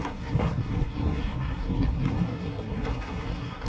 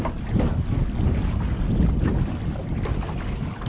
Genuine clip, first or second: second